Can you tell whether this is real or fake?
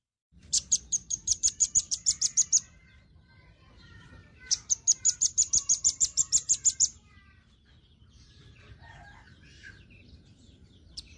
fake